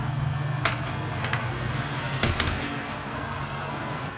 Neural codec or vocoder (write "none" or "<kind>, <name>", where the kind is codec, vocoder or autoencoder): codec, SNAC